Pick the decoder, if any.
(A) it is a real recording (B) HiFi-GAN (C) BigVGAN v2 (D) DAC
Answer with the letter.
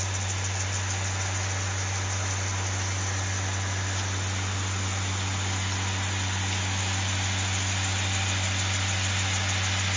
A